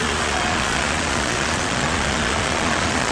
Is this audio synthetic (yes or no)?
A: yes